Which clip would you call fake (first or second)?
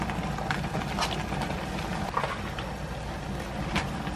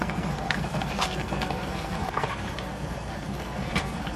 second